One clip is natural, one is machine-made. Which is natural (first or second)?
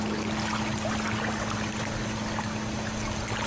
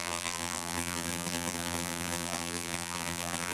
first